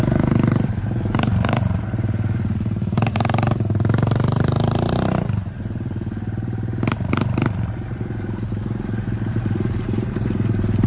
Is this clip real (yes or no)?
no